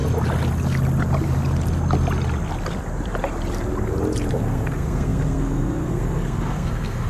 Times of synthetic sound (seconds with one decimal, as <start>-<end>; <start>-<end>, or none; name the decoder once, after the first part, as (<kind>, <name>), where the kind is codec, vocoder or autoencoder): 4.3-7.1 (codec, SNAC)